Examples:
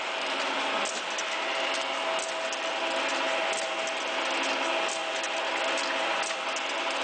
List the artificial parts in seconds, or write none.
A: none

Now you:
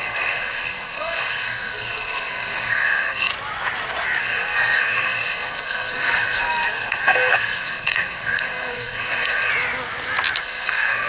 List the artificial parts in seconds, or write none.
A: 0.0-3.3 (codec, SNAC); 4.2-9.5; 10.4-11.1

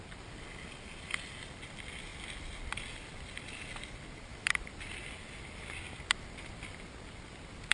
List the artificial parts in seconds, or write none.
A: none

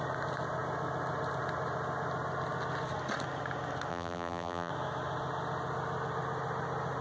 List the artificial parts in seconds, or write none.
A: 3.9-4.7 (vocoder, BigVGAN v2)

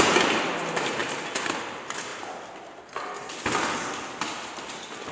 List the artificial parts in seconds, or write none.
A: none

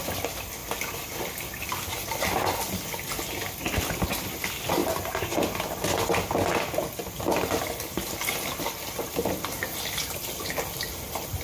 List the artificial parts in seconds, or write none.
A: none

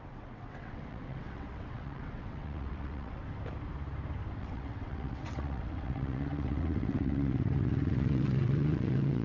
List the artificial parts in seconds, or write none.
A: 0.0-3.2 (vocoder, WaveNeXt); 4.4-9.2

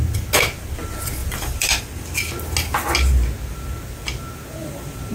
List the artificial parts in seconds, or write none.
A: 1.2-1.8 (vocoder, BigVGAN v2); 4.6-5.1